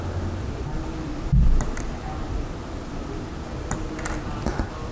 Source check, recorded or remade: recorded